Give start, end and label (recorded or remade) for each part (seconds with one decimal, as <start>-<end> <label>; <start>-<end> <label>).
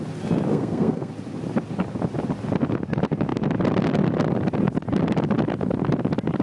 0.0-0.5 recorded; 0.5-1.1 remade; 1.1-6.4 recorded